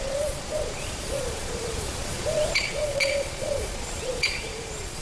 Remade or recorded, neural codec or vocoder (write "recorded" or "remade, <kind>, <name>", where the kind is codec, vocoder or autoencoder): remade, vocoder, Vocos